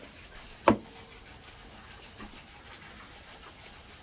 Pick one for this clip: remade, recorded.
recorded